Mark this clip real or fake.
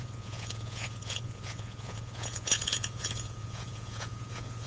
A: fake